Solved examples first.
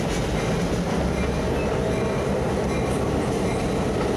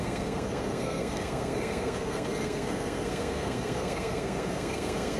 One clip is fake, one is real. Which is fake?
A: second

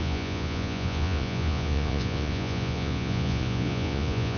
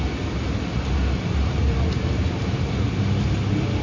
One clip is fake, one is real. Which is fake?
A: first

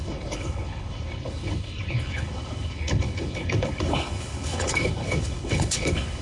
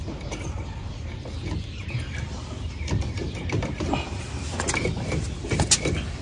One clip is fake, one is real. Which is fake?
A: first